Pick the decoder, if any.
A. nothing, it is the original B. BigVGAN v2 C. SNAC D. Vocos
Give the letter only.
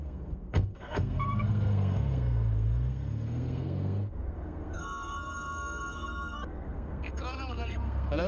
C